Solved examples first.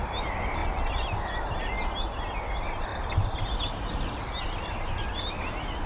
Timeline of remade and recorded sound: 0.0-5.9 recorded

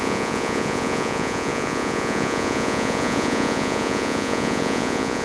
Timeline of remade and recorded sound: 0.0-5.2 remade

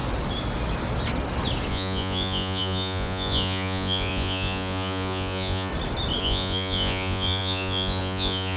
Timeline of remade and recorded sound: 0.0-1.7 recorded; 1.7-5.7 remade; 5.7-6.2 recorded; 6.2-8.6 remade

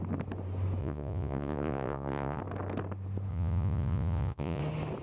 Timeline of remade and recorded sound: 0.0-0.8 recorded; 0.8-2.4 remade; 2.4-3.3 recorded; 3.3-4.6 remade; 4.6-5.0 recorded

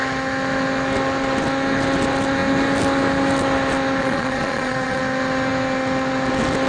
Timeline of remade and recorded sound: 0.0-4.0 recorded; 4.0-5.0 remade; 5.0-6.7 recorded

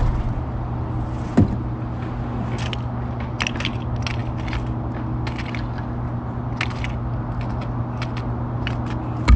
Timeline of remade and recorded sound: 0.0-9.4 recorded